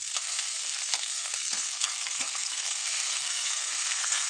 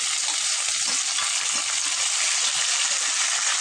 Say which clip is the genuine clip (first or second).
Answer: second